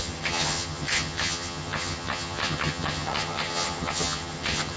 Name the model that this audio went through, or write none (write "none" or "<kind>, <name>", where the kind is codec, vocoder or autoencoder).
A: vocoder, HiFi-GAN